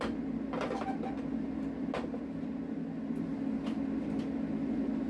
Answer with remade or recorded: recorded